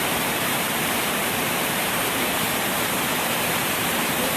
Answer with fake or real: fake